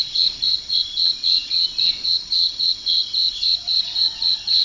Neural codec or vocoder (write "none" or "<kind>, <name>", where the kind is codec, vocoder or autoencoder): vocoder, WaveNeXt